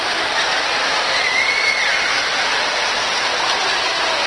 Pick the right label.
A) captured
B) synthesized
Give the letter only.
A